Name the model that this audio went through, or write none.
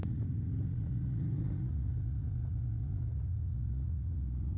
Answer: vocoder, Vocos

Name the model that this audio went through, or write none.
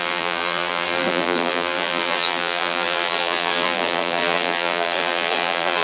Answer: vocoder, BigVGAN v2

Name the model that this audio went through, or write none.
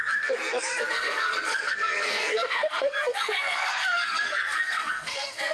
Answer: codec, SNAC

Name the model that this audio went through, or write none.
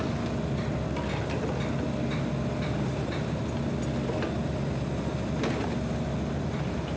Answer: none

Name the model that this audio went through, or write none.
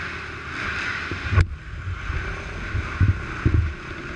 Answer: none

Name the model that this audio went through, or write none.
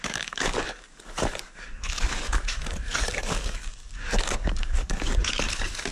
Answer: codec, DAC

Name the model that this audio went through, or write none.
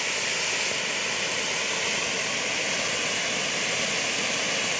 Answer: none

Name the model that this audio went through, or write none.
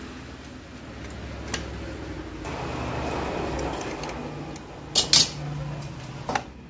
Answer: none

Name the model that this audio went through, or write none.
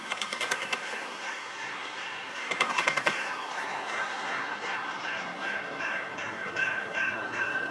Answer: codec, SNAC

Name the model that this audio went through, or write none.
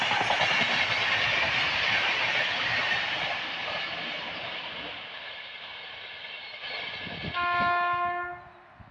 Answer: none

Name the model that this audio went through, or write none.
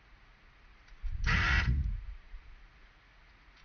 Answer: vocoder, Vocos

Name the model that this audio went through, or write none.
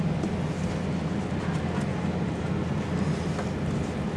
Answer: none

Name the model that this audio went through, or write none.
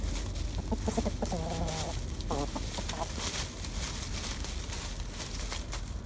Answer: none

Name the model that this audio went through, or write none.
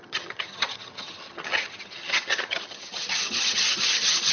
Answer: vocoder, HiFi-GAN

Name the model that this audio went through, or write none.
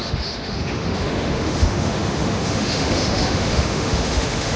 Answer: autoencoder, DAC-VAE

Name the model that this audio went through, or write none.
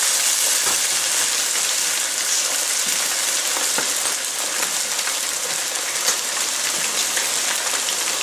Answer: none